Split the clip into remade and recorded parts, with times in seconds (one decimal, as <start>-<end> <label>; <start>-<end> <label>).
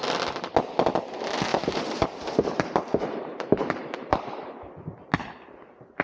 0.0-1.5 recorded; 1.5-4.7 remade; 4.7-6.0 recorded